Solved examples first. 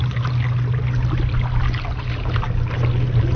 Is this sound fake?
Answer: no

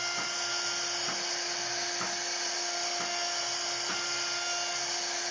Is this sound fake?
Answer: no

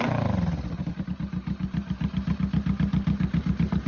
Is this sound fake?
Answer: no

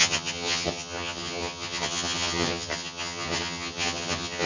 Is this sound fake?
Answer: yes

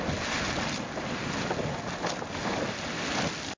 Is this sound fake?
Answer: no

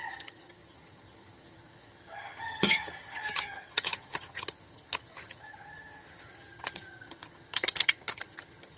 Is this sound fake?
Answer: yes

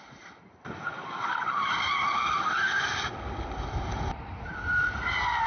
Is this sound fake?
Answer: no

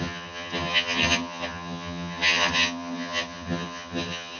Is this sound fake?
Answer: yes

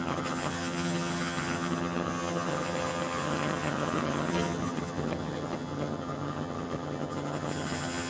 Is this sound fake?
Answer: yes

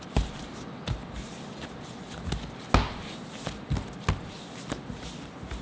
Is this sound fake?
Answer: no